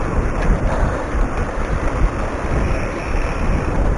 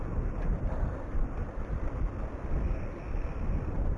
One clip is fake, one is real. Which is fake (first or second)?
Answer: first